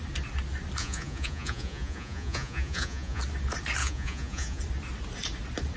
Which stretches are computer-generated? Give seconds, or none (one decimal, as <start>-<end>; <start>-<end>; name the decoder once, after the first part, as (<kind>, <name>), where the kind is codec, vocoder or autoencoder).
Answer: 0.8-3.2 (vocoder, Vocos); 3.8-4.6